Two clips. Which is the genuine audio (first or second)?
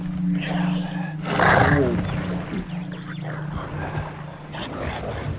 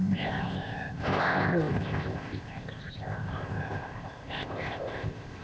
first